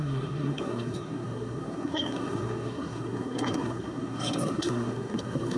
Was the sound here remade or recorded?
remade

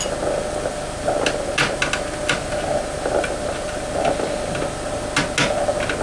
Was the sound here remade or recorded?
recorded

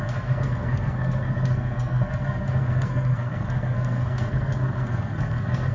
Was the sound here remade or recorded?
remade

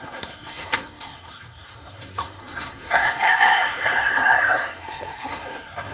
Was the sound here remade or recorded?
remade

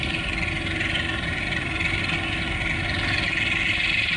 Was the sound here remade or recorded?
recorded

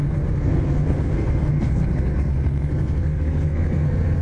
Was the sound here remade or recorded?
remade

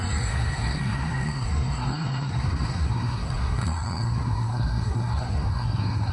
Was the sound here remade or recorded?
remade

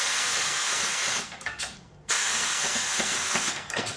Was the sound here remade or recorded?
remade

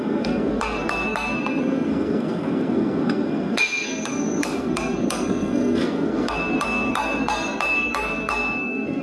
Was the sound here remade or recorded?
remade